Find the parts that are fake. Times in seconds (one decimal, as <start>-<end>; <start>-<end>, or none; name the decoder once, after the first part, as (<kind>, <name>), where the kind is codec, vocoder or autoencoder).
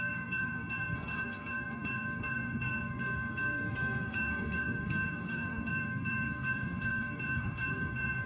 0.0-8.3 (codec, SNAC)